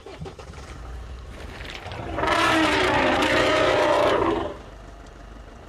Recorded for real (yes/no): no